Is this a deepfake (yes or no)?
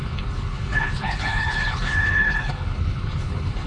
yes